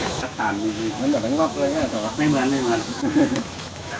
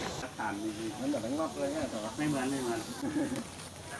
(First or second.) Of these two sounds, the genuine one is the second